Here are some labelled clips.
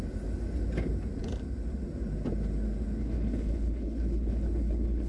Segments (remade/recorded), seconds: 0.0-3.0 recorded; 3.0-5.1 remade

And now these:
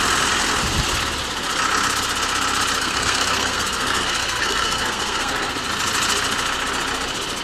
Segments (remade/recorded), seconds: 0.0-2.8 recorded; 2.8-5.5 remade; 5.5-7.4 recorded